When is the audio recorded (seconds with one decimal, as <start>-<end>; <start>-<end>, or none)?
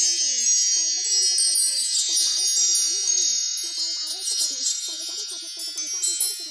0.0-1.7; 2.4-4.1; 5.4-6.5